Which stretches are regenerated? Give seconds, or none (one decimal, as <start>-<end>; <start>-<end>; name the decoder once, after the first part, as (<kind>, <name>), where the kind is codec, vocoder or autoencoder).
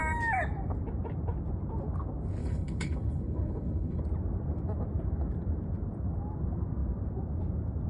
2.4-4.0 (codec, HILCodec)